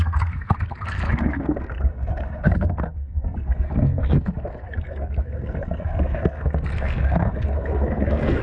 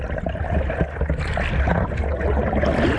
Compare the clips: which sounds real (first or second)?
second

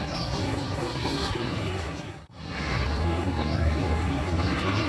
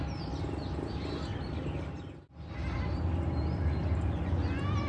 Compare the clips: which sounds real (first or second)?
second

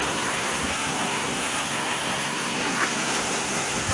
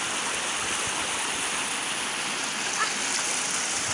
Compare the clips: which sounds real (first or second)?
second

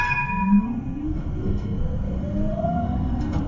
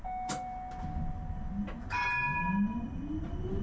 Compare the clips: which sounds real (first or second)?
second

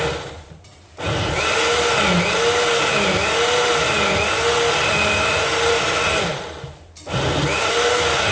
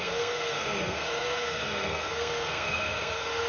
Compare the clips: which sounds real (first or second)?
first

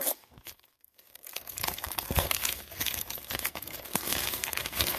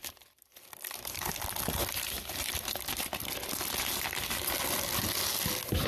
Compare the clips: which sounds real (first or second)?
second